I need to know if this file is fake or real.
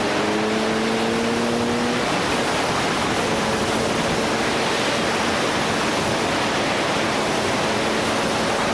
real